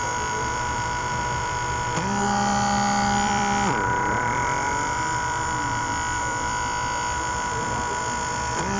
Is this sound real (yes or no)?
no